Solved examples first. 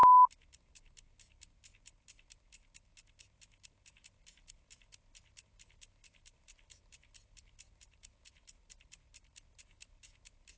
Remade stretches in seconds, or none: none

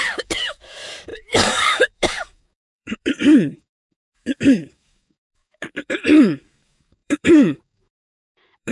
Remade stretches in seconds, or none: 0.0-8.7 (codec, DAC)

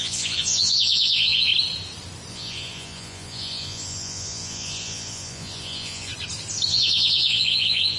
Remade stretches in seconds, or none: 0.0-1.5 (vocoder, Vocos); 2.3-6.1; 6.7-8.0

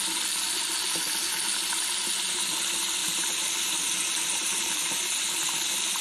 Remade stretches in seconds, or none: 3.0-4.9 (vocoder, BigVGAN v2)

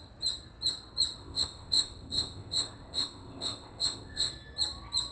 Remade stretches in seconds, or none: 1.2-4.3 (codec, ZipCodec)